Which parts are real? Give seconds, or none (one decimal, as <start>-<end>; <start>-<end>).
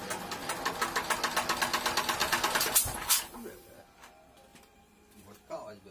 0.0-2.2; 3.2-4.5